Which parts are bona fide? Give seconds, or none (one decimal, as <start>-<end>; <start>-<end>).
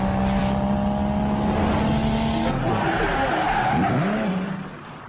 0.0-5.1